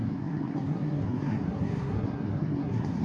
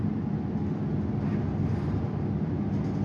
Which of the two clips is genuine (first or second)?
second